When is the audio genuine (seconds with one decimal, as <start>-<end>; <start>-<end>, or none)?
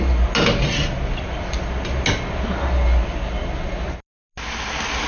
0.0-5.1